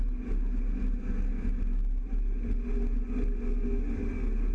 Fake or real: real